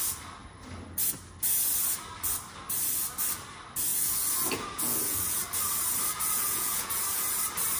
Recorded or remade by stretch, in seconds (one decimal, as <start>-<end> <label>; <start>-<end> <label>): 0.0-3.9 recorded; 3.9-5.4 remade; 5.4-6.1 recorded; 6.1-7.0 remade; 7.0-7.8 recorded